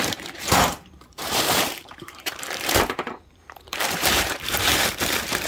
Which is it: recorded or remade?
remade